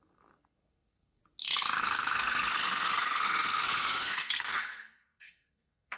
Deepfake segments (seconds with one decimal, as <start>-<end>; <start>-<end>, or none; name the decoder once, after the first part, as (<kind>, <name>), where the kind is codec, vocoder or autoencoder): 0.0-1.2 (codec, SNAC); 1.8-6.0